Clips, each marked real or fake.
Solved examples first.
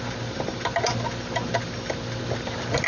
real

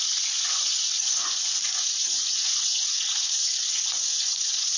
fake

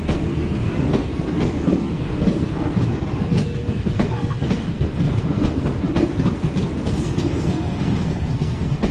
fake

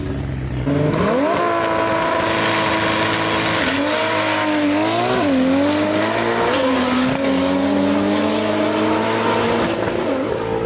real